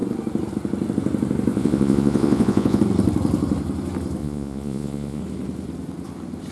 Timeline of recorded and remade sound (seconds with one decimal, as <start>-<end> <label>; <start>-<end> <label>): 0.0-1.5 recorded; 1.5-2.8 remade; 2.8-4.2 recorded; 4.2-5.2 remade; 5.2-6.5 recorded